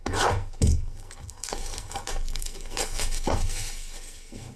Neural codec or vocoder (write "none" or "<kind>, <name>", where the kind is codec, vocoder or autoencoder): codec, SNAC